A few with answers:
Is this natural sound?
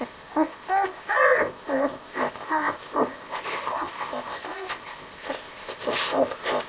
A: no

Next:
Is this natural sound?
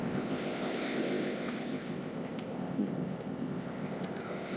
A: no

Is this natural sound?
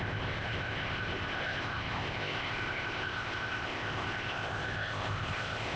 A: no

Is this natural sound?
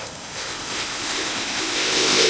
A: no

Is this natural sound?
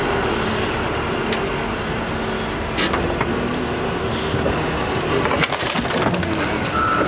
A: yes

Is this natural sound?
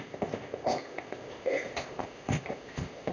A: no